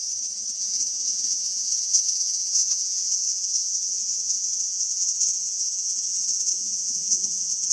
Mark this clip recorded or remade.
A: remade